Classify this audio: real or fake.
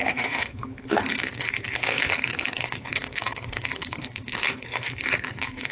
fake